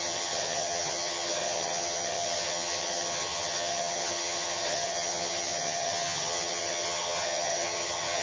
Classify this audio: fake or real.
fake